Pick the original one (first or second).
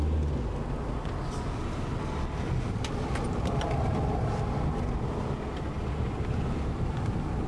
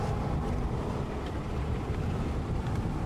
first